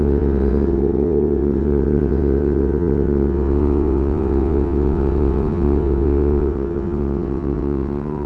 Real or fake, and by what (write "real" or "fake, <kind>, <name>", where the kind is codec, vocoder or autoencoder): fake, vocoder, WaveNeXt